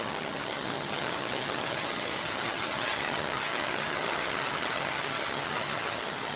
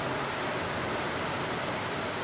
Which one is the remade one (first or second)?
first